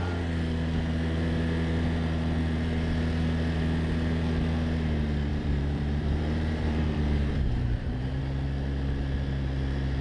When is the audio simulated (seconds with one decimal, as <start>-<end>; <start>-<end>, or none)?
5.3-8.2